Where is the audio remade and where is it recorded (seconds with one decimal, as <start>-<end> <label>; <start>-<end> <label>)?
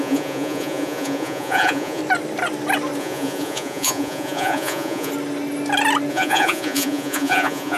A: 0.0-2.0 remade; 2.0-3.0 recorded; 3.0-5.1 remade; 5.1-6.1 recorded; 6.1-7.8 remade